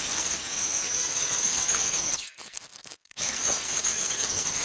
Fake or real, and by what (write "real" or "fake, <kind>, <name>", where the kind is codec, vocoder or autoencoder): fake, codec, SNAC